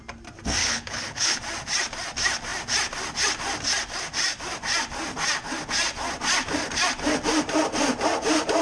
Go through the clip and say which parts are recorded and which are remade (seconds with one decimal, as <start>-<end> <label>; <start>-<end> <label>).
0.0-0.6 recorded; 0.6-1.4 remade; 1.4-8.6 recorded